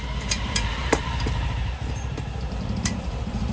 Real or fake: fake